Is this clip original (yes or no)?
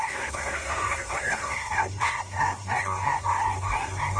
no